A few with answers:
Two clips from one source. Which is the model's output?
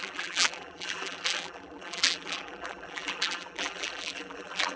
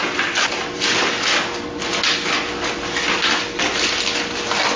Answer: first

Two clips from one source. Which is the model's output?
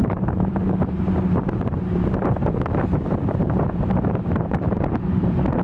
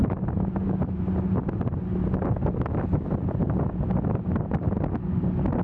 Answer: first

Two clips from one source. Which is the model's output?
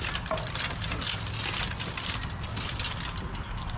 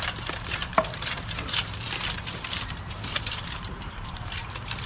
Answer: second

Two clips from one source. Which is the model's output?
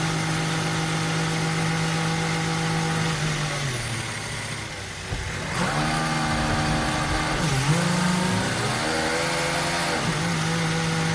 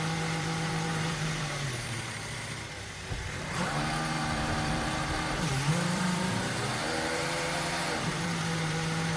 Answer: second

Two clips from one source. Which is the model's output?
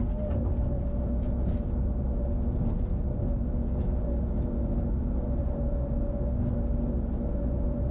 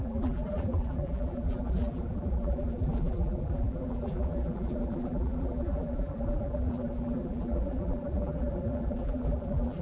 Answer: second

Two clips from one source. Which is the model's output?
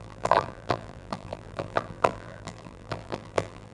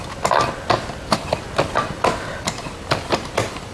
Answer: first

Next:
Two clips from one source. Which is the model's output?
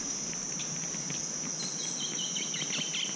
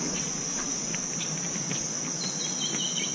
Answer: first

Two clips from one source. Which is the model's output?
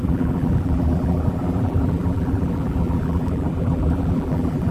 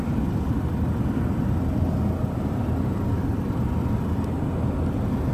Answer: first